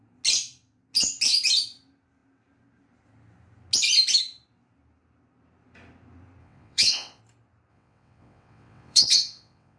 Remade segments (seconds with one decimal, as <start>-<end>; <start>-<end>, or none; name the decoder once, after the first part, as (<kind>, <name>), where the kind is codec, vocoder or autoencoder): 6.4-7.2 (vocoder, WaveNeXt); 7.7-9.8

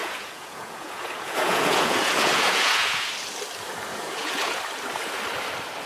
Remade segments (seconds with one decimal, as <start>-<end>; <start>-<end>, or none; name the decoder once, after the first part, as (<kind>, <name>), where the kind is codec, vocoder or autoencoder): 0.0-3.1 (vocoder, Vocos); 3.9-4.6